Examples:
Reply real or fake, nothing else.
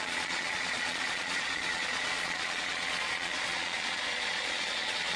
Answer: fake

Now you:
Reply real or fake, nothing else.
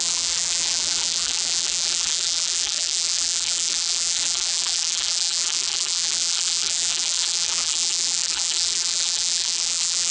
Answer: fake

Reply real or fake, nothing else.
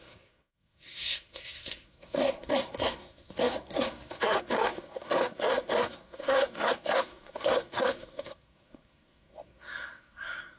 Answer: fake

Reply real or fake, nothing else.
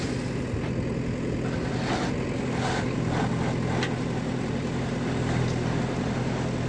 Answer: real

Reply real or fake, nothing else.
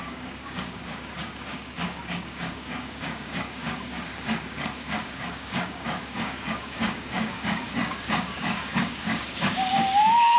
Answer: fake